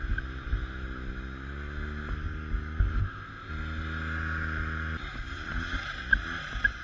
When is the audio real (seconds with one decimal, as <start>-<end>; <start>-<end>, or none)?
0.0-3.0; 3.5-6.8

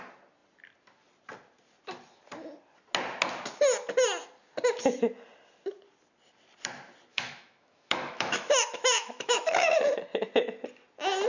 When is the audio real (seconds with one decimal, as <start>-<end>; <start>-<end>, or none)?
0.0-7.1; 10.0-11.3

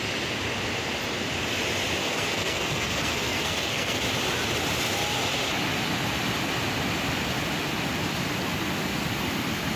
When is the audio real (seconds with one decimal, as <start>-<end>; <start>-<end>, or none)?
0.0-2.0; 4.0-9.8

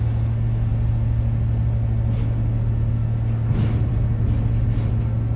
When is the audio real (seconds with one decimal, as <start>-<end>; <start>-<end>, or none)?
0.0-5.4